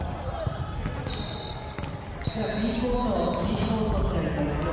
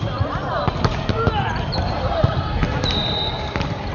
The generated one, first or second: second